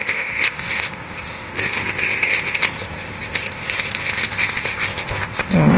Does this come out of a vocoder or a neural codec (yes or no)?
yes